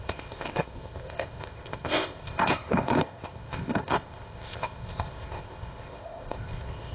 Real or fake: fake